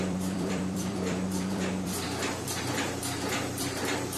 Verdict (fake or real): fake